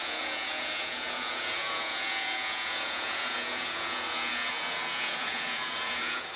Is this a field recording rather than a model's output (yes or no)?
no